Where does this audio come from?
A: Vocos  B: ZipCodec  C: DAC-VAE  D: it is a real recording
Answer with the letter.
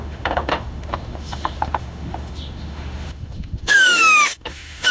C